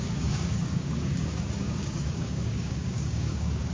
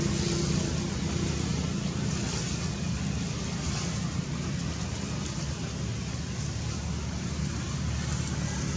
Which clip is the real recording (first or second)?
second